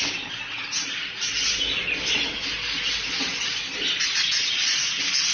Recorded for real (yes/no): yes